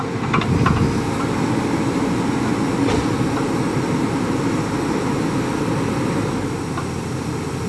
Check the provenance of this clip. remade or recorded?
recorded